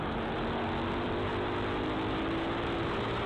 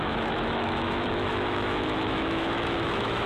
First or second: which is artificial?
second